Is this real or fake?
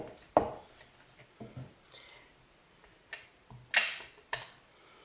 real